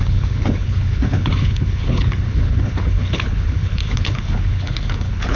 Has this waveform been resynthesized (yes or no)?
yes